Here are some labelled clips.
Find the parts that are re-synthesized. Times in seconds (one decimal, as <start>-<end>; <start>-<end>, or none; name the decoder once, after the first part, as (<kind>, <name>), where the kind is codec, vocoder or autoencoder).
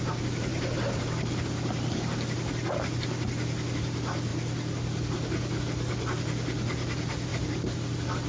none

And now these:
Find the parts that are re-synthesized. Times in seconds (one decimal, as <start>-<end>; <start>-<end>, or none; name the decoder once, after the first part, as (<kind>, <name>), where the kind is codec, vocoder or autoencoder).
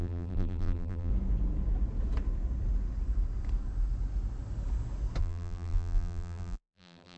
0.0-1.1 (vocoder, BigVGAN v2); 5.2-7.2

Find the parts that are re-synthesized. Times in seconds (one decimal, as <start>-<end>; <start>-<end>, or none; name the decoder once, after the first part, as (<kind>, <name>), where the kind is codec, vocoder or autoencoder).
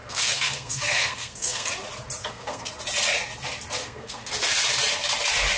0.0-1.7 (codec, SNAC); 2.2-2.7; 3.8-4.3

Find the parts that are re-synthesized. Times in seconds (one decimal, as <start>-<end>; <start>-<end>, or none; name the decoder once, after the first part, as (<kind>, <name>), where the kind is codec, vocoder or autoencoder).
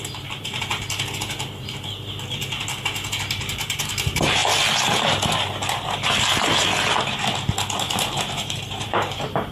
0.0-0.7 (vocoder, BigVGAN v2); 3.4-4.4; 8.3-9.5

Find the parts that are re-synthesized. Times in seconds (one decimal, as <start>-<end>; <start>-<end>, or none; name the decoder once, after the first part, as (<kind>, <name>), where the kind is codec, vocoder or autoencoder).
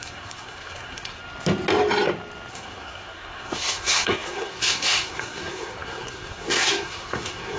0.0-1.2 (codec, SNAC); 2.5-7.6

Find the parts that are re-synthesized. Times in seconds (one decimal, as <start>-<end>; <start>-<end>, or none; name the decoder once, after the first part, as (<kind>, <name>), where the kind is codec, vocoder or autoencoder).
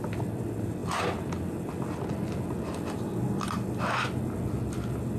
none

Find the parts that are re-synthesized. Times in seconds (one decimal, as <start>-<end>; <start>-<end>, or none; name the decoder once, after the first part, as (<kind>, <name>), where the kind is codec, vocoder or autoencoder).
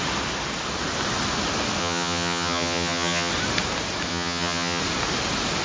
1.8-3.3 (vocoder, HiFi-GAN); 4.1-4.8